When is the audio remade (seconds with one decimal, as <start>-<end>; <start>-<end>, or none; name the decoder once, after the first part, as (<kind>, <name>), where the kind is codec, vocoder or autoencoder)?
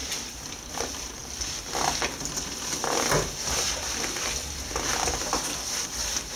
none